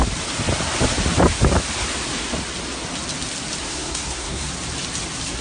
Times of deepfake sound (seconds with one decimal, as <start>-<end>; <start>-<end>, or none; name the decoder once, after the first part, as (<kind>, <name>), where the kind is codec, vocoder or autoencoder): 3.6-4.5 (codec, SNAC)